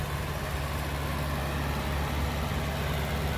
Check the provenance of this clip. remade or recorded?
recorded